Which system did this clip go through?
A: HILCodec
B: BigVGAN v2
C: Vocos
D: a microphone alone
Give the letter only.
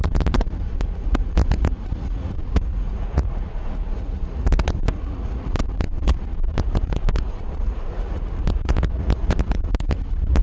C